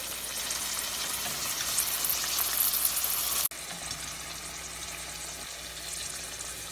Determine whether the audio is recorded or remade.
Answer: recorded